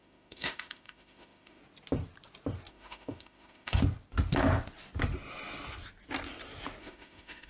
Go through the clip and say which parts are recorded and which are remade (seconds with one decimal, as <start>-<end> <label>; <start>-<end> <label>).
0.0-1.6 remade; 1.6-2.7 recorded; 2.7-3.8 remade; 3.8-6.8 recorded; 6.8-7.5 remade